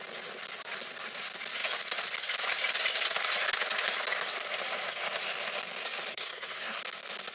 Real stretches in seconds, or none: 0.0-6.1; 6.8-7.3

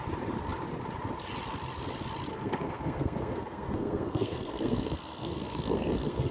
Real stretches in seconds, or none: 0.0-2.3

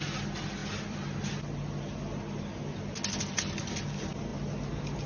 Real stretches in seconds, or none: 0.0-5.1

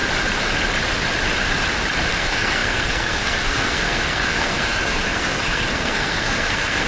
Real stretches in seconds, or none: 0.0-2.1